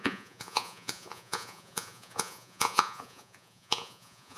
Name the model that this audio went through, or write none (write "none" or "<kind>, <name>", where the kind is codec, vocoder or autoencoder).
vocoder, Vocos